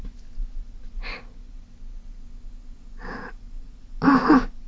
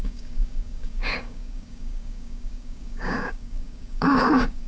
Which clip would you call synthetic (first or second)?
second